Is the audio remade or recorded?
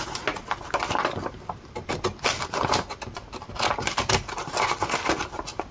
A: recorded